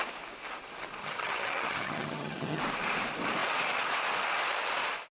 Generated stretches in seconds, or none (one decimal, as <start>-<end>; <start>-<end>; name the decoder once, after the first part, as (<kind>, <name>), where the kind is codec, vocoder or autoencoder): 1.0-2.6 (vocoder, HiFi-GAN)